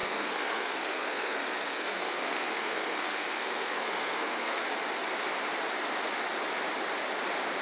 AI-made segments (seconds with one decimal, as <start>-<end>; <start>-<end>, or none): 0.0-4.6